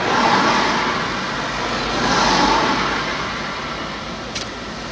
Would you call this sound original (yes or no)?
yes